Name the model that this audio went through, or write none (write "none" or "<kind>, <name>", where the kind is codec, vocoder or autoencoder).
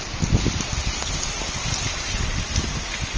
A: none